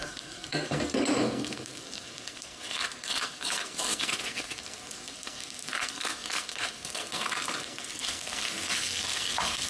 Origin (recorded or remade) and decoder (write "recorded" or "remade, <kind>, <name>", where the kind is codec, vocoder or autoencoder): remade, codec, SNAC